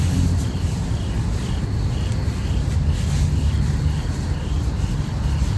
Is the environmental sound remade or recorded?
recorded